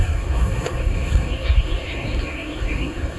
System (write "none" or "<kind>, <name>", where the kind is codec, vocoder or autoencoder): codec, SNAC